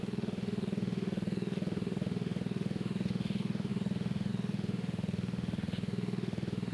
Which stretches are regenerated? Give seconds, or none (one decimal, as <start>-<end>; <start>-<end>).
0.0-6.7